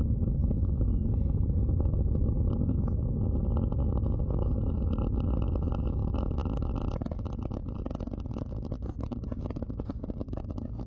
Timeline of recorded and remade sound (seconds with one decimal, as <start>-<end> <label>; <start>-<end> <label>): 0.0-6.0 recorded; 6.0-6.7 remade; 6.7-10.9 recorded